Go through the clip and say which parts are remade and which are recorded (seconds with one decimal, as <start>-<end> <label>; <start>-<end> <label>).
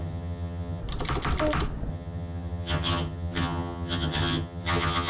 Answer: 0.0-0.8 remade; 0.8-1.9 recorded; 1.9-5.1 remade